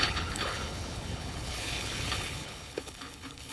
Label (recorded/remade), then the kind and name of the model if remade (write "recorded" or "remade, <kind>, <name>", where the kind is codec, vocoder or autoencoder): remade, codec, HILCodec